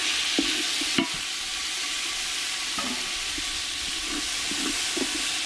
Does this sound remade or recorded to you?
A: recorded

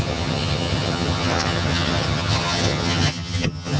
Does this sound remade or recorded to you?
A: remade